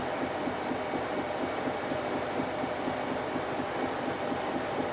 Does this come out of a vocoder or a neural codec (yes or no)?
no